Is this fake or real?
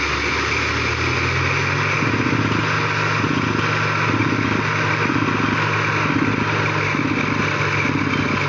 real